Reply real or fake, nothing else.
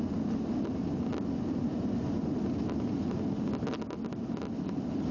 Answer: real